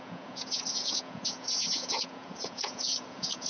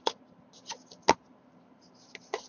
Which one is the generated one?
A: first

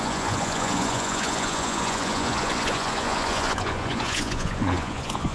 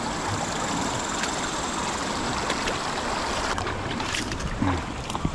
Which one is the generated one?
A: first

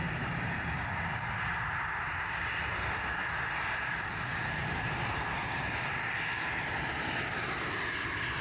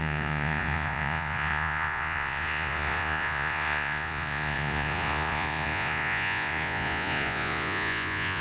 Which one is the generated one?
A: second